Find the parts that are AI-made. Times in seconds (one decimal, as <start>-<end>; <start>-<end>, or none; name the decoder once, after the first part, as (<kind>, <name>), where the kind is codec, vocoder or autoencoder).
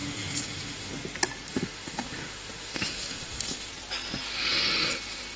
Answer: 0.0-0.9 (autoencoder, DAC-VAE); 1.5-3.7